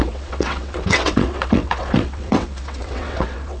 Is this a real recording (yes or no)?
no